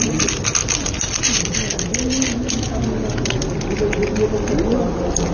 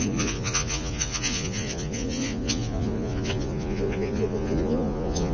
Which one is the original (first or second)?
first